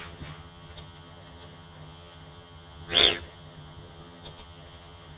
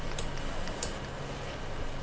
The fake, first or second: first